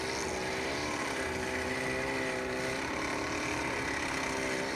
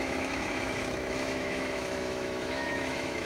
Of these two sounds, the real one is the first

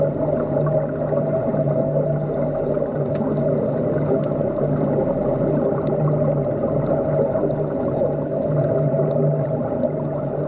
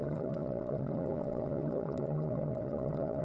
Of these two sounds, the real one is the first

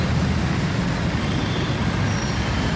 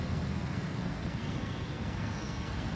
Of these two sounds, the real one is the first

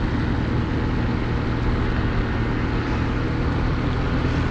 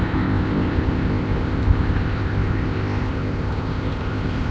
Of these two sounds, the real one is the first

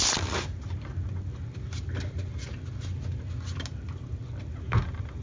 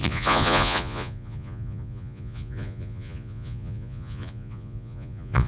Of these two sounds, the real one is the first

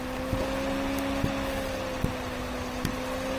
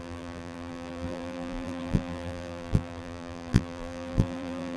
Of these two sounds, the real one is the first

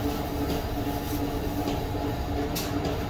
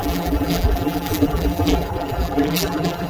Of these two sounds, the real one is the first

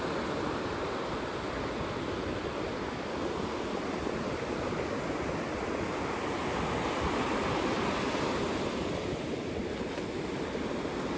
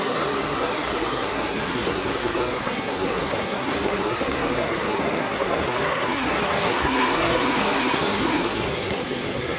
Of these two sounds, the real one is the first